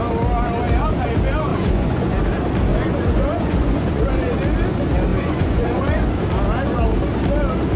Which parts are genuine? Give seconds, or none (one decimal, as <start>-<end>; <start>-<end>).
0.0-1.5; 2.2-2.7; 4.3-5.1; 6.1-7.8